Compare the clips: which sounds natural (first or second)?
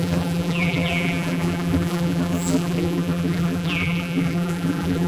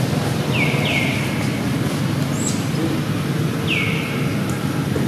second